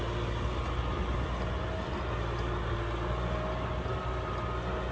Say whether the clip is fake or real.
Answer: real